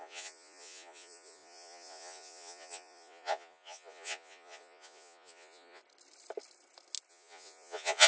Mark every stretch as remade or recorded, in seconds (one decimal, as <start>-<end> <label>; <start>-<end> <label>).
0.0-5.8 remade; 5.8-7.1 recorded; 7.1-8.1 remade